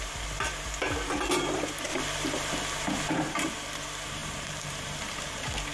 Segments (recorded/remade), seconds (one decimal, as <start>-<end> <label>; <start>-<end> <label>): 0.0-4.2 recorded; 4.2-5.0 remade; 5.0-5.7 recorded